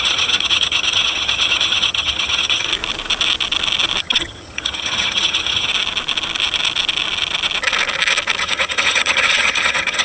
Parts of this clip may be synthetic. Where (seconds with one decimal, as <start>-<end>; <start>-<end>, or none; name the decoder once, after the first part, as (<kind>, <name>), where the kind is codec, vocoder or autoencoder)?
0.0-2.7 (vocoder, HiFi-GAN); 4.0-5.7; 8.4-10.0